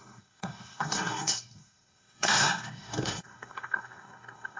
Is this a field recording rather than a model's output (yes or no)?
no